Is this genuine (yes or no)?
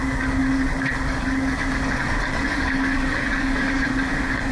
no